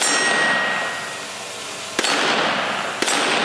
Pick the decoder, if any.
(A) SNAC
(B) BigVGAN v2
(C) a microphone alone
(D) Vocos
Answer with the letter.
C